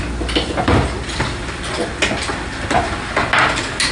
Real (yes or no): yes